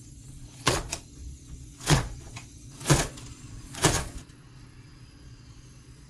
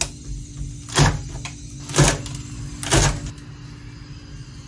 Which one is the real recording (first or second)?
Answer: second